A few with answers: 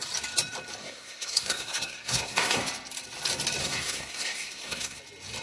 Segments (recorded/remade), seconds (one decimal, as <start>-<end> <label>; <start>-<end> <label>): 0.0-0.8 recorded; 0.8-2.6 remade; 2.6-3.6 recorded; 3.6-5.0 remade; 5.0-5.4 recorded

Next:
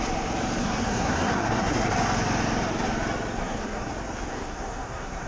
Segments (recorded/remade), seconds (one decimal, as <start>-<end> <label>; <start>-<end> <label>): 0.0-0.6 recorded; 0.6-1.9 remade; 1.9-3.4 recorded; 3.4-3.9 remade; 3.9-4.3 recorded; 4.3-5.3 remade

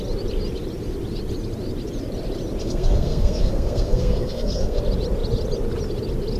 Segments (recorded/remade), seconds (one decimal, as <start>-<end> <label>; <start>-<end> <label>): 0.0-2.6 recorded; 2.6-4.8 remade; 4.8-6.4 recorded